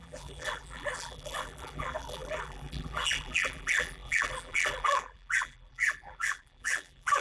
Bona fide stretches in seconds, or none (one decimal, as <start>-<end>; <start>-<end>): none